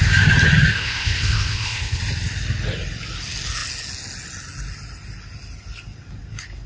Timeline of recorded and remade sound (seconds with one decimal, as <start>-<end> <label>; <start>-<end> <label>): 0.0-0.7 recorded; 0.7-2.0 remade; 2.0-6.7 recorded